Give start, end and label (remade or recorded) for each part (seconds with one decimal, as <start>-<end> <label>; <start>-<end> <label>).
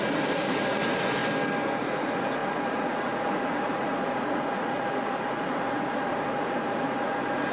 0.0-1.2 remade; 1.2-1.8 recorded; 1.8-7.5 remade